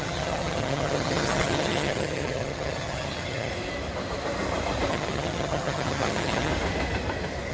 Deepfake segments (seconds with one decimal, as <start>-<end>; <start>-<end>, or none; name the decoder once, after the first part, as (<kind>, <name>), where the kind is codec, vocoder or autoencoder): 0.0-3.5 (vocoder, HiFi-GAN); 4.9-6.5